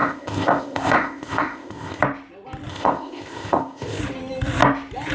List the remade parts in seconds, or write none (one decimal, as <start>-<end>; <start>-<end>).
0.0-2.0; 2.7-4.0